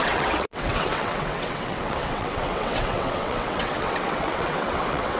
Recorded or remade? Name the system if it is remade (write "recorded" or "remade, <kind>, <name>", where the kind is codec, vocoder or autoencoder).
remade, vocoder, WaveNeXt